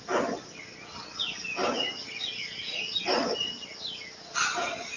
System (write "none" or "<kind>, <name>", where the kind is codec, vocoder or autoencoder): none